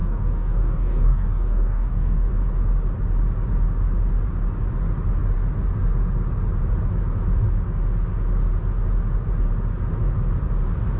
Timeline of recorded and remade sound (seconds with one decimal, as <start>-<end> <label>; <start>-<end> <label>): 0.0-2.3 remade; 2.3-11.0 recorded